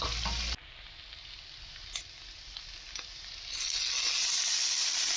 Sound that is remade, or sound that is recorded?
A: recorded